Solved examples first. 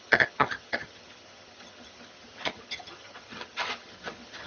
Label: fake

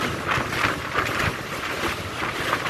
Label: real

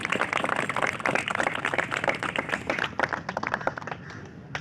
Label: real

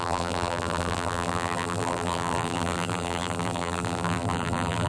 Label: fake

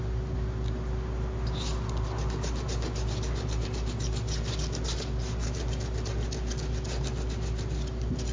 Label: real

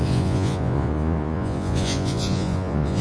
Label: fake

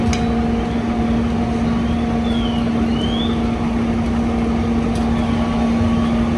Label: real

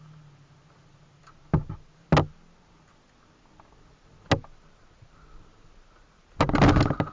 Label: real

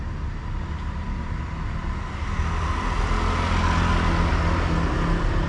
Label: real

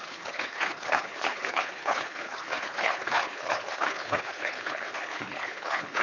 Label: fake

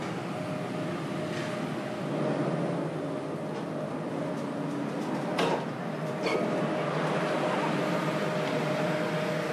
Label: real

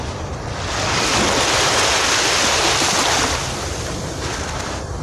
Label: real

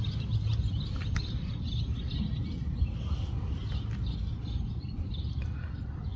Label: real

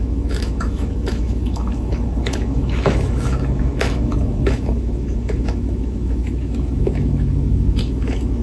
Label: fake